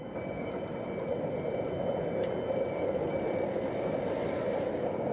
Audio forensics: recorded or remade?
recorded